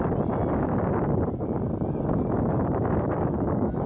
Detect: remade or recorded recorded